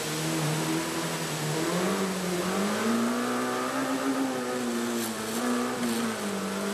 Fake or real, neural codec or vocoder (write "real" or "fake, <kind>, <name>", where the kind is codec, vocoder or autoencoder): real